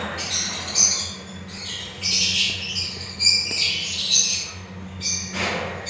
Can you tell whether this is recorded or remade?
recorded